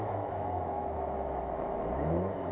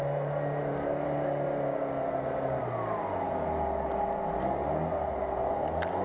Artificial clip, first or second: first